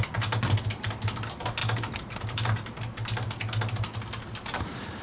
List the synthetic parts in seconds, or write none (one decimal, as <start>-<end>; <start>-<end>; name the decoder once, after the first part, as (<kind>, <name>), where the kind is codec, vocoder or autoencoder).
none